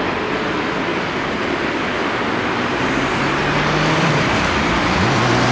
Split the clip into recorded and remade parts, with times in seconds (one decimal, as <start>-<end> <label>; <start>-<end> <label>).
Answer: 0.0-5.5 recorded